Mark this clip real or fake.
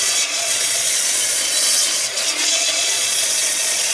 fake